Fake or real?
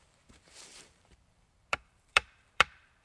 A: fake